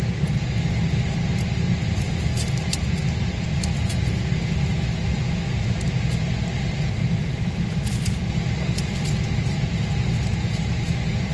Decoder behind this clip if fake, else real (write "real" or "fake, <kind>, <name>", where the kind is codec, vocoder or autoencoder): real